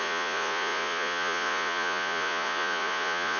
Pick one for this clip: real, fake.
fake